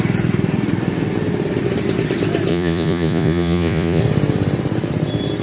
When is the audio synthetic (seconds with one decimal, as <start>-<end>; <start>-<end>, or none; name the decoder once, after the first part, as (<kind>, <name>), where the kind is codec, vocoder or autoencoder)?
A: 2.5-4.0 (vocoder, Vocos)